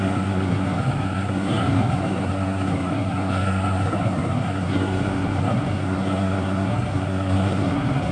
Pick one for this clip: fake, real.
fake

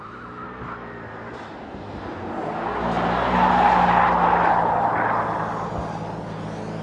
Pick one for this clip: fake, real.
real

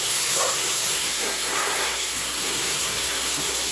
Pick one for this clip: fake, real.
fake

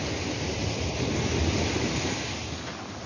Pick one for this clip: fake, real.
real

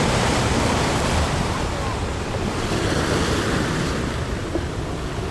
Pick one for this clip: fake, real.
real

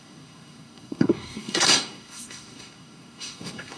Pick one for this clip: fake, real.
fake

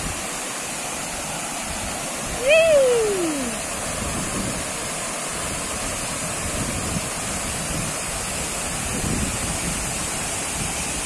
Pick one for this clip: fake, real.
real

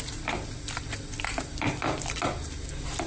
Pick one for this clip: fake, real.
real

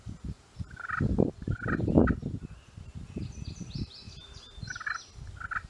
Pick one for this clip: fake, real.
real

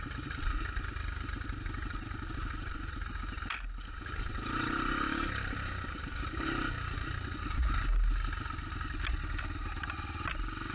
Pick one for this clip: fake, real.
real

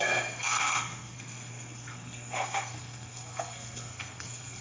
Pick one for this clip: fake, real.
fake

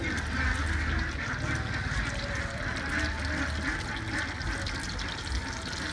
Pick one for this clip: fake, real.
real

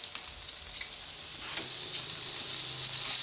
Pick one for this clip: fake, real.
real